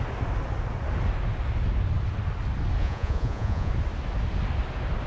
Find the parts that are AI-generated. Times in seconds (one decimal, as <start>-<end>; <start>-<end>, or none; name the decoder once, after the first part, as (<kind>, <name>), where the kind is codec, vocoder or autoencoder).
2.8-3.7 (vocoder, Vocos)